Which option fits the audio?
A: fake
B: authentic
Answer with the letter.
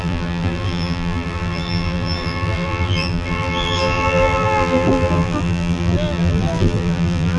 A